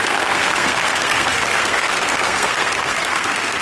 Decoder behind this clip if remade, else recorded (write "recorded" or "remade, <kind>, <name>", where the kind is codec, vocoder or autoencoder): remade, codec, SNAC